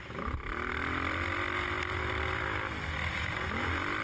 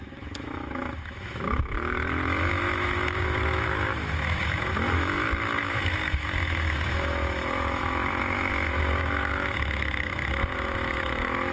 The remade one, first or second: second